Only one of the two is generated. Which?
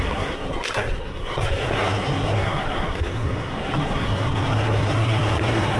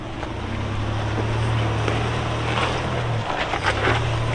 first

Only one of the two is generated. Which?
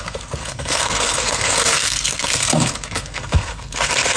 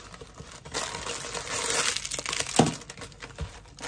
first